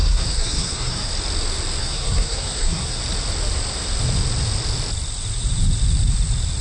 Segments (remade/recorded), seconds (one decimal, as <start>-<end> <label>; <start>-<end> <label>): 0.0-1.1 remade; 1.1-1.8 recorded; 1.8-3.0 remade; 3.0-6.6 recorded